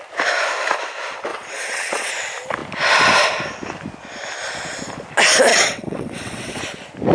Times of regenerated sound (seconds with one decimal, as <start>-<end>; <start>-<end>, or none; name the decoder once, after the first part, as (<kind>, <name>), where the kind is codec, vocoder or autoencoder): 1.3-2.1 (vocoder, WaveNeXt); 5.5-6.6